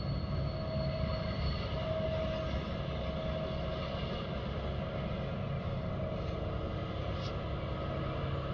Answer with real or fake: real